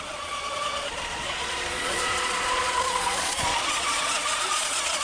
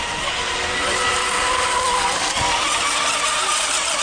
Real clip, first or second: second